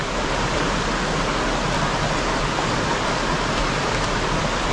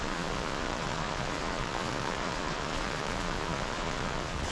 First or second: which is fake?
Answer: second